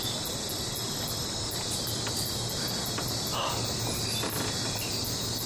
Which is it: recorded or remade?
recorded